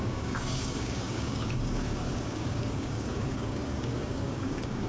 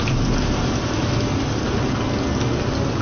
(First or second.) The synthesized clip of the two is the first